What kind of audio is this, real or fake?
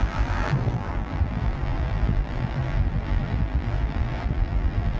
fake